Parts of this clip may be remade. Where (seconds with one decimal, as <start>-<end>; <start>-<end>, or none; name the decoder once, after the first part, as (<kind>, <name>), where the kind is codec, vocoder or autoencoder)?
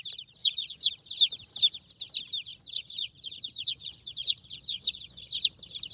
0.4-0.9 (vocoder, Vocos); 2.5-5.2